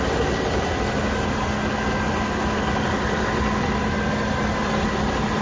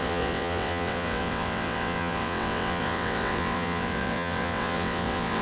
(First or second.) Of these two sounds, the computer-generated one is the second